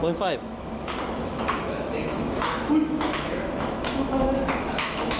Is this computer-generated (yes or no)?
yes